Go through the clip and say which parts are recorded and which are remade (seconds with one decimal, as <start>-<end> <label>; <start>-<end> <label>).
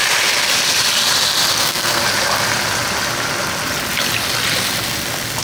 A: 0.0-1.5 recorded; 1.5-2.0 remade; 2.0-5.4 recorded